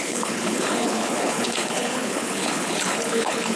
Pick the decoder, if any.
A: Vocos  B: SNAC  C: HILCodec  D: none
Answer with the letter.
C